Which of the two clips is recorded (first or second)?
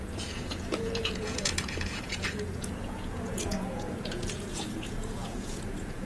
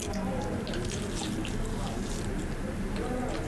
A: second